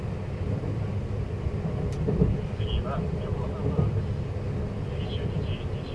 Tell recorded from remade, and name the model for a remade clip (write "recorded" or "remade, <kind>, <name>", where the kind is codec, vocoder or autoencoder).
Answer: recorded